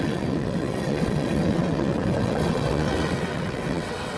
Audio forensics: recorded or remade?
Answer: remade